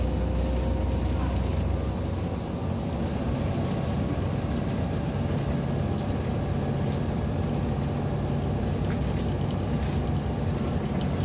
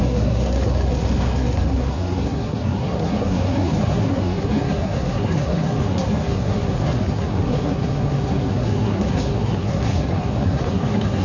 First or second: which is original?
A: first